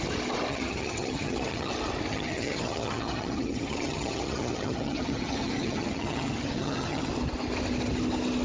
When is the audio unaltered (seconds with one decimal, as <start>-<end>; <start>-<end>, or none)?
0.0-0.5; 1.7-2.1; 7.1-8.4